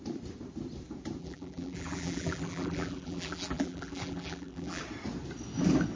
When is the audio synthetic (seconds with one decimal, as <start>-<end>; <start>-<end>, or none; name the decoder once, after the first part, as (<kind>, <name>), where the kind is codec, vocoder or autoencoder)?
1.2-4.8 (vocoder, BigVGAN v2)